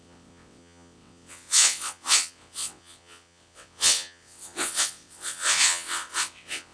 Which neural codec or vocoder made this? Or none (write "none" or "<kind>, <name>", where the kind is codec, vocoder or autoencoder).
vocoder, WaveNeXt